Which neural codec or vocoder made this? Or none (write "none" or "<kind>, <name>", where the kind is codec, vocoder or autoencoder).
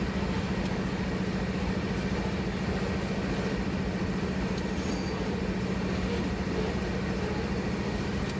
none